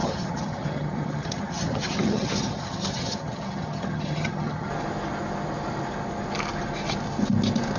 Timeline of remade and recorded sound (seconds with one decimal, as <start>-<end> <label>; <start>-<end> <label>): 0.0-4.7 remade; 4.7-7.8 recorded